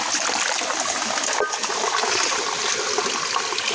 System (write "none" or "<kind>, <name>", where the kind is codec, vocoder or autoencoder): none